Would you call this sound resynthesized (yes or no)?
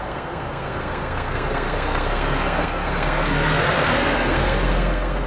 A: yes